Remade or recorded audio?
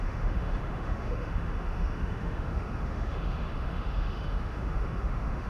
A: remade